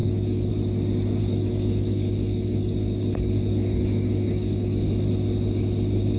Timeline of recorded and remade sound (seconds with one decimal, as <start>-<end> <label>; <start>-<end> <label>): 0.0-0.5 remade; 0.5-1.2 recorded; 1.2-4.9 remade; 4.9-6.2 recorded